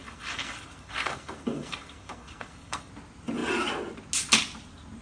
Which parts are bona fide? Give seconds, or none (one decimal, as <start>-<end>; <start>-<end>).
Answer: 2.9-5.0